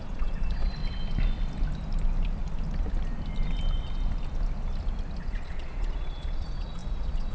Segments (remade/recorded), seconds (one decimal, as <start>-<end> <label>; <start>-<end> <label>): 0.0-0.8 remade; 0.8-5.2 recorded; 5.2-7.3 remade